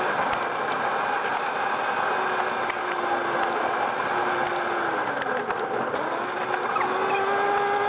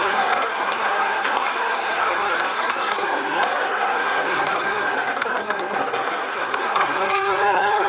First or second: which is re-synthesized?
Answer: second